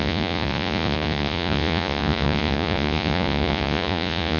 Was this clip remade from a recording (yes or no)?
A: yes